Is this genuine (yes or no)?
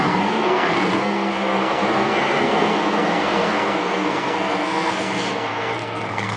no